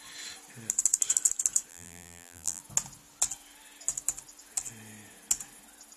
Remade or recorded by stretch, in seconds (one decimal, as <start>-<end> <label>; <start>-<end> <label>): 0.0-1.7 recorded; 1.7-2.6 remade; 2.6-6.0 recorded